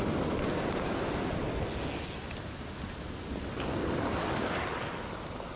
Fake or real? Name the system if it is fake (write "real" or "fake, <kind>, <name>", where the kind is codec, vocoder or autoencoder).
real